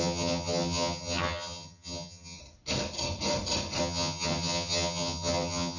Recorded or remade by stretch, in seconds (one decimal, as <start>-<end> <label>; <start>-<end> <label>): 0.0-2.4 remade; 2.4-3.8 recorded; 3.8-5.8 remade